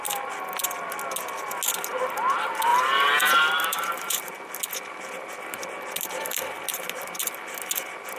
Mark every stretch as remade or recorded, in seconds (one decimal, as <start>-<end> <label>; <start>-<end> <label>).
0.0-2.7 recorded; 2.7-4.6 remade; 4.6-8.2 recorded